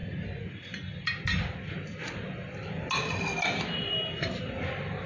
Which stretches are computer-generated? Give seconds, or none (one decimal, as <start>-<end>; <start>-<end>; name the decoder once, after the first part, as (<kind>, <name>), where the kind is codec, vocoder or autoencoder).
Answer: none